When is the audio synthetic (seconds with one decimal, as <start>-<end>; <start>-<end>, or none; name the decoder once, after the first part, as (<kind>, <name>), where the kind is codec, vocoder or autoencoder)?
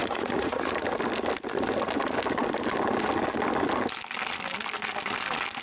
0.0-0.7 (vocoder, Vocos)